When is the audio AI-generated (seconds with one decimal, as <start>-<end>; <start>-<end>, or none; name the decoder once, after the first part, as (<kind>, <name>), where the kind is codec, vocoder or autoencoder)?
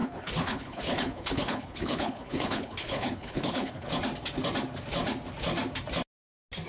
0.0-3.9 (codec, HILCodec)